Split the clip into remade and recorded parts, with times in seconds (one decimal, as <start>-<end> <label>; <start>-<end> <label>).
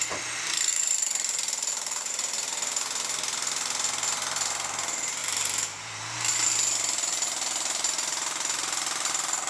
0.0-0.7 recorded; 0.7-2.1 remade; 2.1-5.2 recorded; 5.2-6.5 remade; 6.5-9.5 recorded